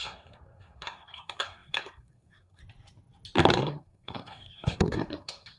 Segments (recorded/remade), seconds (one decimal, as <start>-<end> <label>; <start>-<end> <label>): 0.0-2.6 remade; 2.6-3.5 recorded; 3.5-5.6 remade